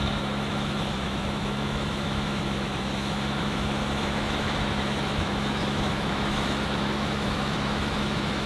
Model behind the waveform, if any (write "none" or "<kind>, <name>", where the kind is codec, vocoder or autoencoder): autoencoder, DAC-VAE